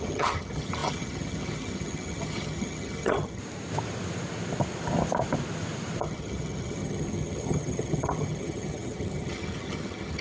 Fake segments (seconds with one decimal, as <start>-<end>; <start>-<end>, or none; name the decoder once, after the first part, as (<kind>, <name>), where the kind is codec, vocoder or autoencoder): 0.0-3.4 (vocoder, HiFi-GAN); 6.0-10.2